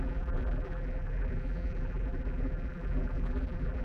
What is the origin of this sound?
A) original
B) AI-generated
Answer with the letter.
B